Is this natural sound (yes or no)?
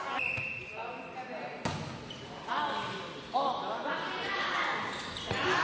yes